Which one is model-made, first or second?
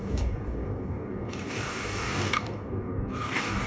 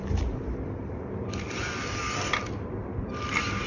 first